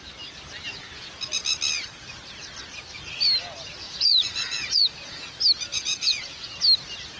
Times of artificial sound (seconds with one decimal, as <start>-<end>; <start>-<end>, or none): 3.8-5.3; 5.7-6.6